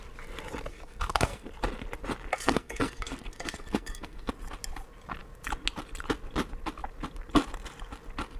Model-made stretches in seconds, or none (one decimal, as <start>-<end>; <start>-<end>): 0.7-1.5; 2.3-4.3